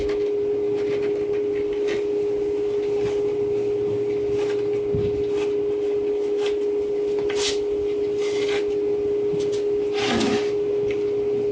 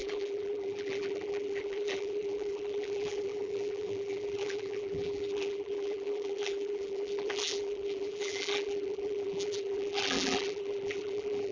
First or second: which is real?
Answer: first